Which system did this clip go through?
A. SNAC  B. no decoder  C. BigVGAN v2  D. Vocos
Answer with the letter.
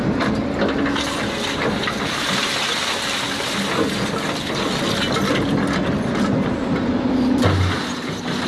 B